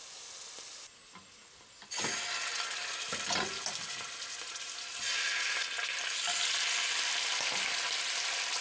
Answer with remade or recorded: recorded